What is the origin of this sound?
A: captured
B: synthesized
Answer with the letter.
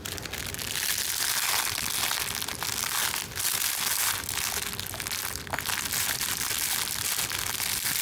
A